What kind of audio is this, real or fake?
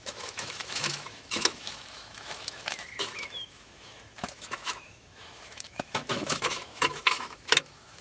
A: fake